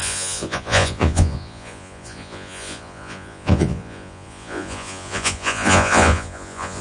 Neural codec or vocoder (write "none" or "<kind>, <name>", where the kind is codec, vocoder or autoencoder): vocoder, Vocos